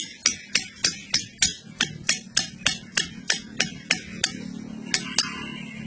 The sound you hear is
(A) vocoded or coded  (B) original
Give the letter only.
B